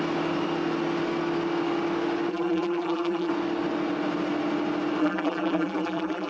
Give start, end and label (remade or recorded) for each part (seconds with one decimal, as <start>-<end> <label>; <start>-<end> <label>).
0.0-2.3 recorded; 2.3-3.3 remade; 3.3-5.0 recorded; 5.0-6.3 remade